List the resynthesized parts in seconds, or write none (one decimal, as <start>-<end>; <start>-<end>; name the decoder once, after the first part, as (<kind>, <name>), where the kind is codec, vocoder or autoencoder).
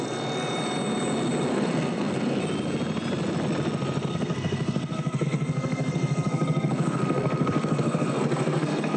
1.5-2.4 (codec, SNAC); 4.1-9.0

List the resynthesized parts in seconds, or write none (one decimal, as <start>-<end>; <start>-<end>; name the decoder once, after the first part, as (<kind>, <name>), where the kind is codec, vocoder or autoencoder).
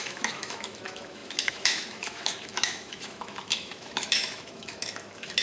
0.0-5.4 (autoencoder, DAC-VAE)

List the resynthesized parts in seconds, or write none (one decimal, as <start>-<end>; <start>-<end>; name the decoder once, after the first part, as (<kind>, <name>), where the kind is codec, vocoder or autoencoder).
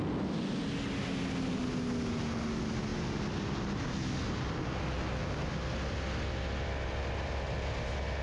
none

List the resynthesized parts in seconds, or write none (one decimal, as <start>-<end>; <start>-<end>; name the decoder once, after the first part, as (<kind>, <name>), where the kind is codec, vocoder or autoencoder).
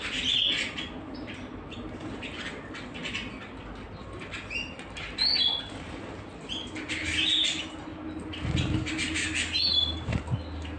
none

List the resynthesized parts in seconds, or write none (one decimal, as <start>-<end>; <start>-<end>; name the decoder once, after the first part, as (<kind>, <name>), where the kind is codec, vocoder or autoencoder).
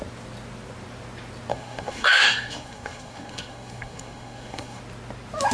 1.5-4.8 (codec, SNAC)